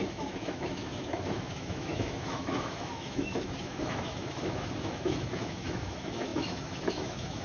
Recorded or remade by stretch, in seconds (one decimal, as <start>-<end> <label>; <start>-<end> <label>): 0.0-7.4 remade